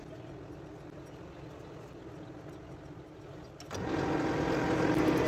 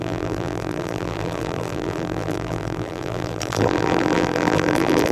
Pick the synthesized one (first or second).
second